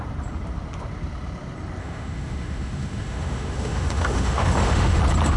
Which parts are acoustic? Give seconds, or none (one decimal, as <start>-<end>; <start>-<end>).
0.0-1.8; 5.0-5.4